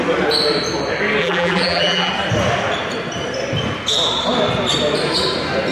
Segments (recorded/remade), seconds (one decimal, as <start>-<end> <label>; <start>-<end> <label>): 0.0-1.2 recorded; 1.2-2.1 remade; 2.1-5.7 recorded